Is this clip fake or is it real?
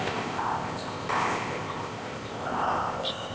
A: fake